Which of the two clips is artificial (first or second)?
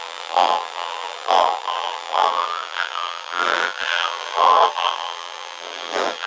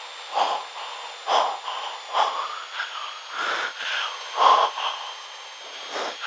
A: first